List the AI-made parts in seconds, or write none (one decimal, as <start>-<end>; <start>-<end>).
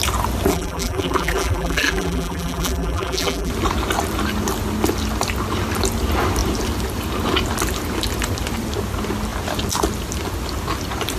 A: 0.5-3.5